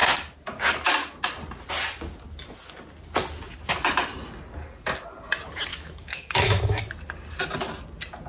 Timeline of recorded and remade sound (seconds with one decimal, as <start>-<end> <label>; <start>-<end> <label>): 0.0-5.7 recorded; 5.7-6.8 remade; 6.8-8.3 recorded